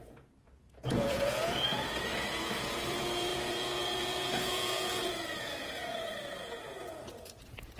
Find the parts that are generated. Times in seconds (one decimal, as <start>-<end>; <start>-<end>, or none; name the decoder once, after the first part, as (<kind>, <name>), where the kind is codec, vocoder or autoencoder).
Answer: 0.0-7.8 (vocoder, Vocos)